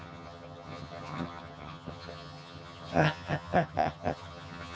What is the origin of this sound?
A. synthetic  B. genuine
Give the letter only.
A